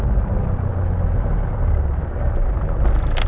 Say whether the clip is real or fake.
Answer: real